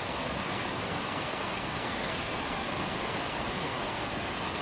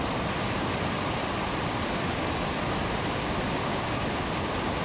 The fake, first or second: first